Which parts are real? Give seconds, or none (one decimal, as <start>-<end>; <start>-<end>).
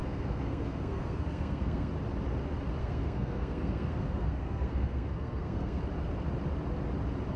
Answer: 1.9-2.8; 5.8-7.4